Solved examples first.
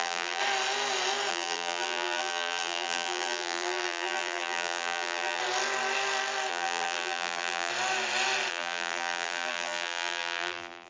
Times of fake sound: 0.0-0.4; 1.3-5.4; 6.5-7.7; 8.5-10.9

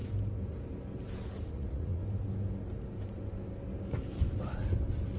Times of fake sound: 1.5-2.0

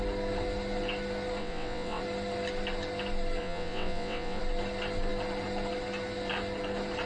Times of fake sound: 1.4-2.0; 3.4-4.4

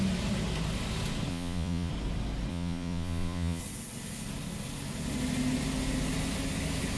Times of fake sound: 1.3-1.9; 2.5-3.6